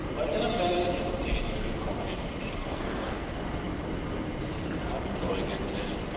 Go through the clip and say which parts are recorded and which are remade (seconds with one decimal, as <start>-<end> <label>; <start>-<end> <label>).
0.0-2.6 recorded; 2.6-3.3 remade; 3.3-6.2 recorded